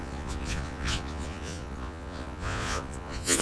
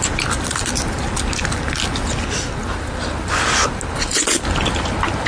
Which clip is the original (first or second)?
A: second